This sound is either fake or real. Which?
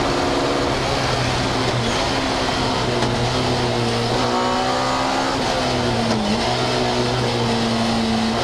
real